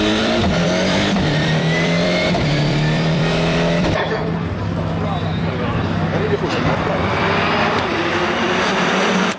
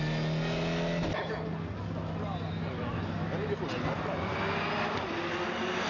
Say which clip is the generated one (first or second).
first